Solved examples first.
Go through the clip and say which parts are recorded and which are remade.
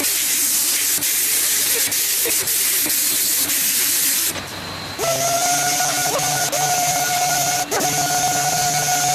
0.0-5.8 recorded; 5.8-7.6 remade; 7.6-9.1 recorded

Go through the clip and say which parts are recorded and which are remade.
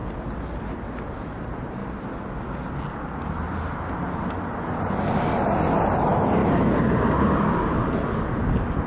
0.0-6.4 recorded; 6.4-7.3 remade; 7.3-8.9 recorded